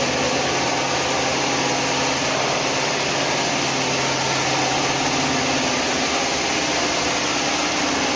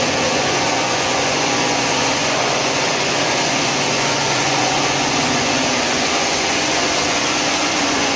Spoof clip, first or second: second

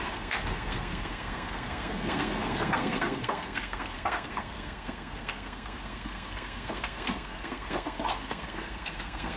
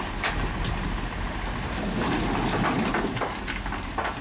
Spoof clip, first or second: first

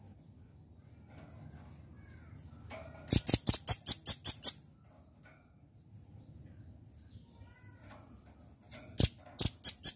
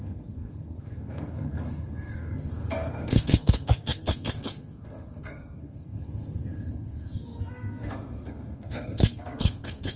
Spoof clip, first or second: second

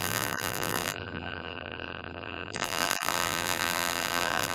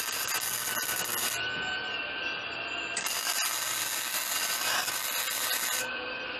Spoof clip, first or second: first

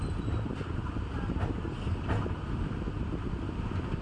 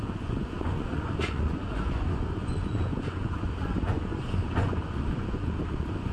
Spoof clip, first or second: second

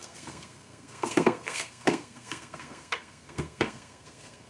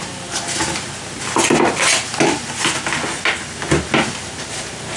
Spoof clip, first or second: first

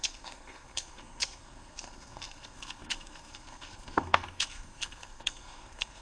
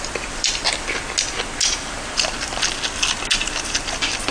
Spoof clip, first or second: first